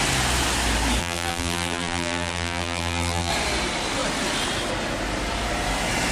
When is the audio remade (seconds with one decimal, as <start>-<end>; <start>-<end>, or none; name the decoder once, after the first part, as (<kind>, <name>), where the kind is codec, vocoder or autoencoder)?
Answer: 1.0-3.3 (vocoder, BigVGAN v2)